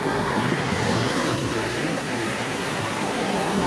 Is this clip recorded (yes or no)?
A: no